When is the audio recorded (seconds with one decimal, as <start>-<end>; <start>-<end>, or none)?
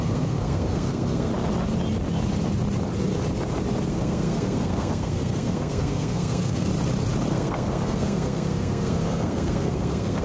1.3-3.9; 6.7-7.3